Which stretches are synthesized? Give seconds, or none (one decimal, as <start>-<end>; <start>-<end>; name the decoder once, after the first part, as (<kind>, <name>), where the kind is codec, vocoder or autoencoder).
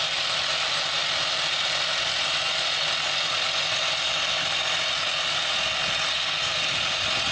6.1-6.6 (codec, SNAC)